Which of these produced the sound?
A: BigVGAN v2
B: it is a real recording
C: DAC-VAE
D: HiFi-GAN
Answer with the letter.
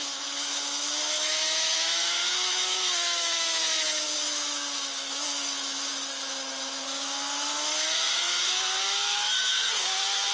C